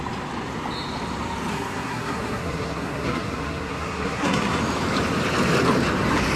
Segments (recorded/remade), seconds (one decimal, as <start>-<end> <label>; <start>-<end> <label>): 0.0-1.5 recorded; 1.5-4.6 remade; 4.6-6.4 recorded